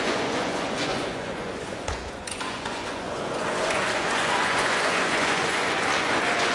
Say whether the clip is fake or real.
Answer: fake